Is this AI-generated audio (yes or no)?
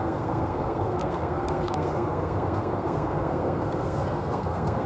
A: yes